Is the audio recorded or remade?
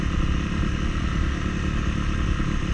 recorded